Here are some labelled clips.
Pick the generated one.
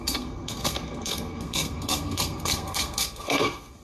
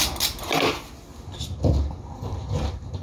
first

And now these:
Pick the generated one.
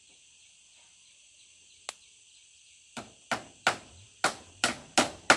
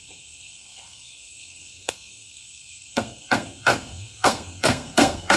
second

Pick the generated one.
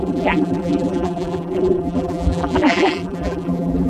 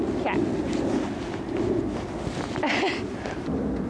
first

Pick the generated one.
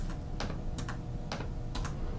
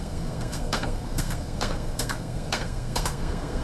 second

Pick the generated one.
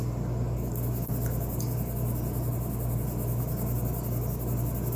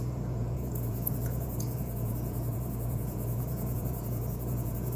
second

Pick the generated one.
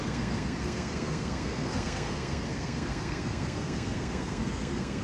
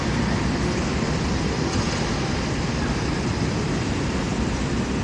first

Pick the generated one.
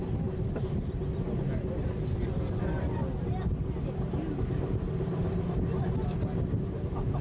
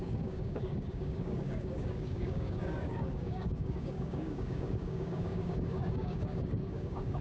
second